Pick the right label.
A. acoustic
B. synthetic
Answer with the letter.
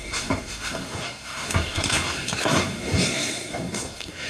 B